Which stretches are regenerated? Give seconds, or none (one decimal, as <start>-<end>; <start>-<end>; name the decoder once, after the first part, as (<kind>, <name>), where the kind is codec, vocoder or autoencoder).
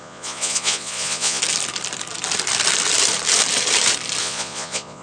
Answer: 0.0-1.4 (vocoder, Vocos); 4.2-5.0